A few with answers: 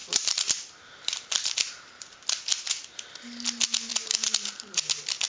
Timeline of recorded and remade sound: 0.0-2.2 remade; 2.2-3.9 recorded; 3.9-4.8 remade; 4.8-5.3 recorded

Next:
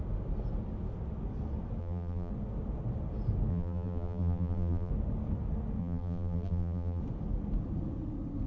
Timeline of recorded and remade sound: 0.0-1.8 recorded; 1.8-2.3 remade; 2.3-3.5 recorded; 3.5-4.9 remade; 4.9-5.8 recorded; 5.8-7.0 remade; 7.0-8.5 recorded

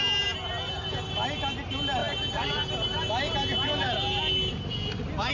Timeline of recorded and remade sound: 0.0-5.3 recorded

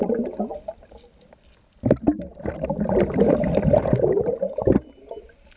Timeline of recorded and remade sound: 0.0-1.6 remade; 1.6-2.3 recorded; 2.3-4.5 remade; 4.5-5.6 recorded

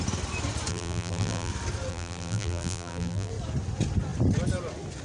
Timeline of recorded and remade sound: 0.0-0.7 recorded; 0.7-1.5 remade; 1.5-1.9 recorded; 1.9-3.3 remade; 3.3-5.0 recorded

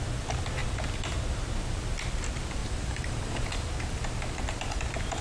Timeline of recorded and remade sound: 0.0-2.6 recorded; 2.6-3.5 remade; 3.5-5.2 recorded

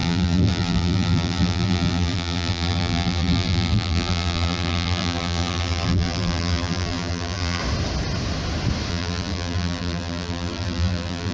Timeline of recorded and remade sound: 0.0-7.6 remade; 7.6-8.9 recorded; 8.9-11.3 remade